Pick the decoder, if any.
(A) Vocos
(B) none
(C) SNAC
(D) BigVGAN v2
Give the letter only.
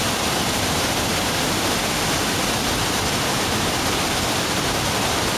D